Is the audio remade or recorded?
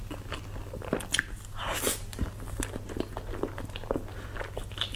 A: recorded